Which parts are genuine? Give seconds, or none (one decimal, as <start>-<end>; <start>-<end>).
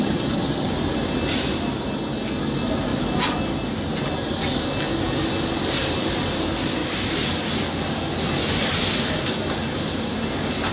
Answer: 0.7-10.7